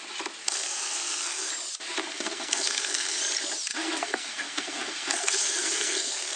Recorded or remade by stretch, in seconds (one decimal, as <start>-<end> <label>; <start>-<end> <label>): 0.0-0.4 recorded; 0.4-1.5 remade; 1.5-2.0 recorded; 2.0-3.2 remade; 3.2-3.7 recorded; 3.7-6.4 remade

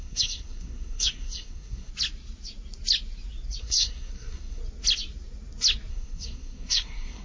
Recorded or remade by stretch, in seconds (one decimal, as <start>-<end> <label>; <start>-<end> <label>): 0.0-1.9 remade; 1.9-3.6 recorded; 3.6-4.6 remade; 4.6-5.9 recorded; 5.9-7.2 remade